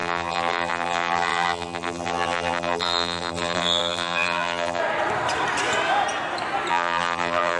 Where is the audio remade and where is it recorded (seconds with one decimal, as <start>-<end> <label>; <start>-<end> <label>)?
0.0-4.8 remade; 4.8-6.7 recorded; 6.7-7.6 remade